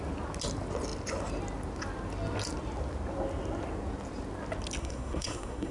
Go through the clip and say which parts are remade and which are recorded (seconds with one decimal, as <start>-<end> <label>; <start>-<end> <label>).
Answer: 0.0-4.8 recorded; 4.8-5.7 remade